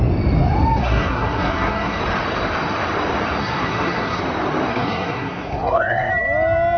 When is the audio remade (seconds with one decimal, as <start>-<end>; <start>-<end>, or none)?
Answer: 0.8-2.0; 3.4-4.2; 4.7-6.1